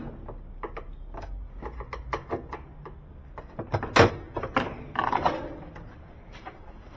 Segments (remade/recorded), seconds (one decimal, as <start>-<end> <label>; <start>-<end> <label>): 0.0-7.0 recorded